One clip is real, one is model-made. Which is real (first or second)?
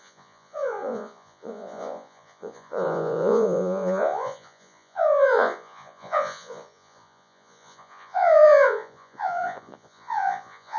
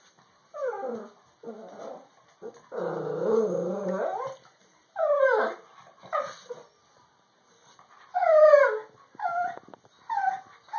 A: second